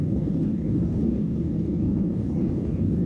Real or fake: fake